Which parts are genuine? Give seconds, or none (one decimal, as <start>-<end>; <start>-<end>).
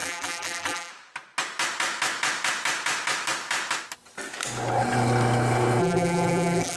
0.9-5.8